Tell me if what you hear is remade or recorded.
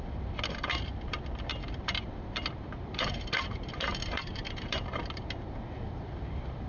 remade